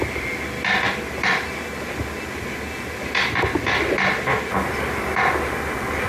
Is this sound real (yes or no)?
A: yes